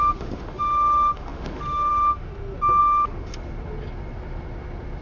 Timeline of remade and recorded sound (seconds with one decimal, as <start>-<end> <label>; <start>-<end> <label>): 0.0-2.3 remade; 2.3-2.8 recorded; 2.8-3.3 remade; 3.3-5.0 recorded